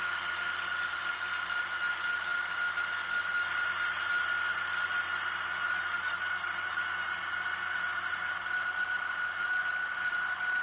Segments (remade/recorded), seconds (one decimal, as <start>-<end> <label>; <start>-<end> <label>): 0.0-10.6 recorded